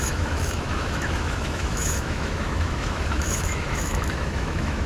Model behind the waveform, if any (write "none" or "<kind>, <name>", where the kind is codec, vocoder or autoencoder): autoencoder, DAC-VAE